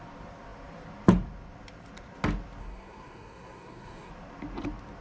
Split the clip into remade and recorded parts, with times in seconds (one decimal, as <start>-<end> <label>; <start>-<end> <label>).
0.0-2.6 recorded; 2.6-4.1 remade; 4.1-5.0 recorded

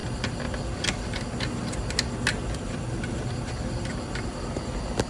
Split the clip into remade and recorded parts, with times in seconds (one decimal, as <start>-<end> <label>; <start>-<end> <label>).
0.0-5.1 recorded

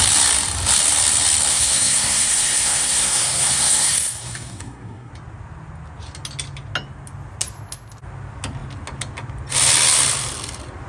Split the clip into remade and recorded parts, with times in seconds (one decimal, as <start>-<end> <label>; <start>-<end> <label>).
0.0-1.5 recorded; 1.5-5.1 remade; 5.1-10.9 recorded

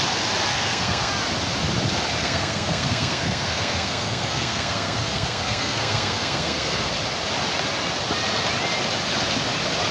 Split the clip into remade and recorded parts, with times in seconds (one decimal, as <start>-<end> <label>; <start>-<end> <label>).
0.0-0.5 recorded; 0.5-1.1 remade; 1.1-2.2 recorded; 2.2-6.9 remade; 6.9-9.9 recorded

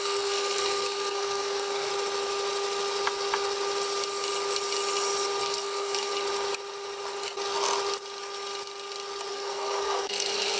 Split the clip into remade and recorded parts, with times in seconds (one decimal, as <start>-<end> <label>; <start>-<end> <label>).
0.0-1.9 remade; 1.9-5.4 recorded; 5.4-6.1 remade; 6.1-9.3 recorded; 9.3-10.6 remade

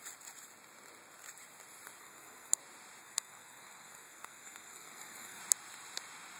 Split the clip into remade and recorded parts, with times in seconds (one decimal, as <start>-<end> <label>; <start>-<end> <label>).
0.0-2.0 recorded; 2.0-2.6 remade; 2.6-3.0 recorded; 3.0-5.4 remade; 5.4-6.4 recorded

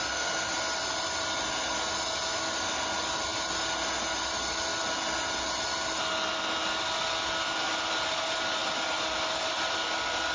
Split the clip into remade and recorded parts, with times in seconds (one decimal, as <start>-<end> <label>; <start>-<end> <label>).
0.0-10.3 recorded